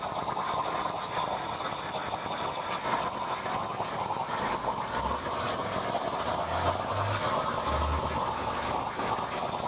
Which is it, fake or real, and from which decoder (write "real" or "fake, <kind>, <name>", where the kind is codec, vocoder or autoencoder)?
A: real